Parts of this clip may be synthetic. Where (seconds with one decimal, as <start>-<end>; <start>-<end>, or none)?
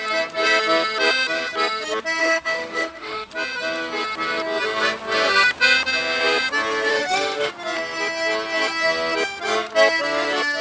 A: 2.2-3.3; 6.9-7.5